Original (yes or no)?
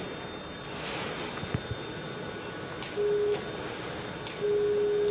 yes